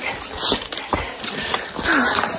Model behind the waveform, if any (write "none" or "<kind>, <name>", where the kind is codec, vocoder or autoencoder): none